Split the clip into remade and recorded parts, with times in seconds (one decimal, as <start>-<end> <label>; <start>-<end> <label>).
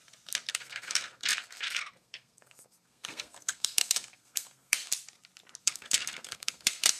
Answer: 0.0-0.5 recorded; 0.5-4.9 remade; 4.9-5.6 recorded; 5.6-7.0 remade